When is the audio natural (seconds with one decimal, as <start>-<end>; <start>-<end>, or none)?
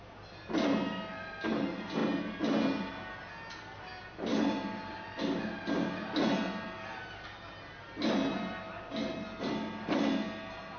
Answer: 0.0-10.8